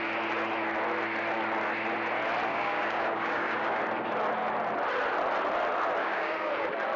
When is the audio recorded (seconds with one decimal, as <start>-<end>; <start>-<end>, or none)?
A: 0.0-2.5; 3.8-6.0; 6.5-7.0